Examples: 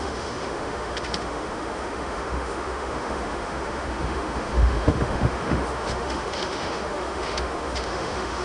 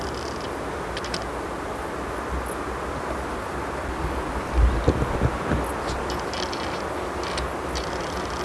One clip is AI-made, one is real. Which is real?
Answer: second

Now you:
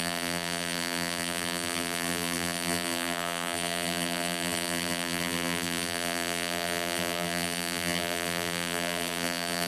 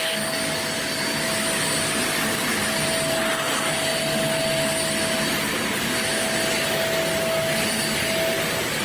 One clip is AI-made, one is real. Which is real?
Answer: second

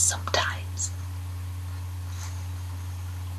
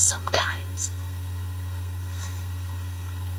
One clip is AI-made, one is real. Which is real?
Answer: first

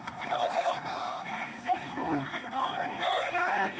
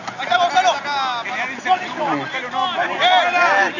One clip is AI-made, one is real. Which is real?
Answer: second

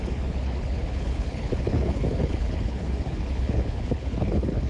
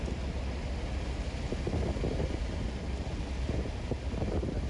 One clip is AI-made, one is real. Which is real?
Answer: second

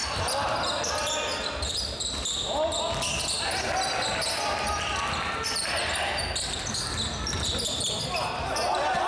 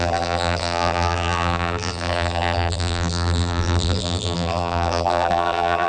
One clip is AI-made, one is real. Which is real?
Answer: first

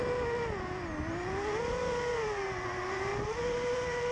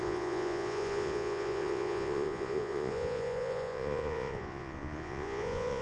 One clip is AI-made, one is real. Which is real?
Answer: first